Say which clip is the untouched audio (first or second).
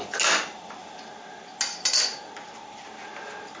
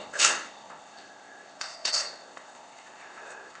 first